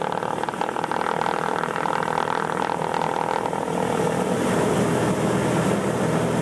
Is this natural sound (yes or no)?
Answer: yes